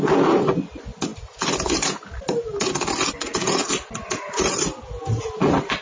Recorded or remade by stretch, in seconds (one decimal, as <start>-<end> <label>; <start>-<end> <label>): 0.0-5.8 recorded